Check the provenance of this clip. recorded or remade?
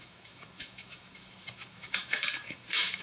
remade